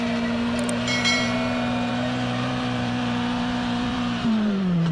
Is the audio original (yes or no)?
no